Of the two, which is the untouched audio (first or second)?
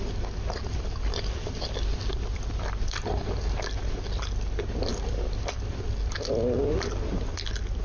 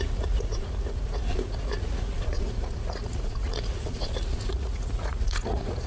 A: first